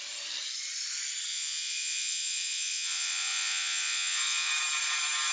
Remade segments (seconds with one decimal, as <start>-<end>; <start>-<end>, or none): 1.3-4.5

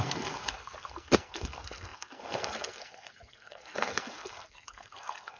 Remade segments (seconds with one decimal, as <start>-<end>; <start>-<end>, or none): 0.0-5.4